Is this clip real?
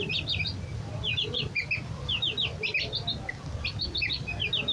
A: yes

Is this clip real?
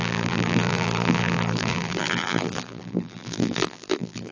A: no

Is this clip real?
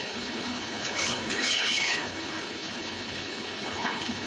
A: no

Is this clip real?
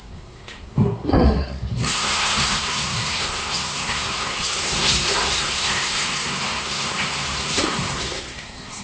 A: no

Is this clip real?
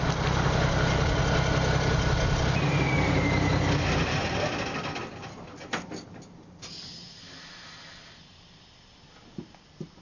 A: yes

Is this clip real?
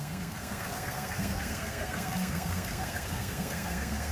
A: no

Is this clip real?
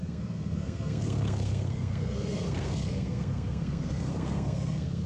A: no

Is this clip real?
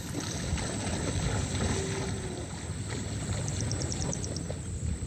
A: yes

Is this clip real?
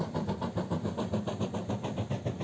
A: yes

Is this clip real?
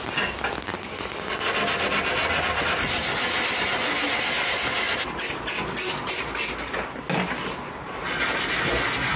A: yes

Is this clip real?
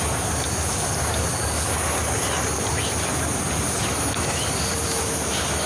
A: yes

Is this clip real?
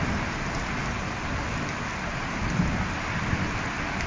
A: yes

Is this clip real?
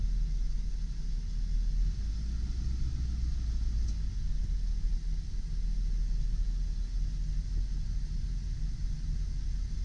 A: yes